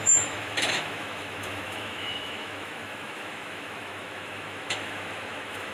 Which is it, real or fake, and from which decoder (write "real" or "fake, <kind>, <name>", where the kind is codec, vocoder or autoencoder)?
fake, autoencoder, DAC-VAE